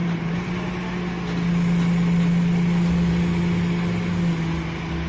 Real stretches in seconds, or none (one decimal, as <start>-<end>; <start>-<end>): 0.0-5.1